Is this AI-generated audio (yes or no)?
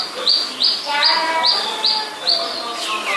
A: no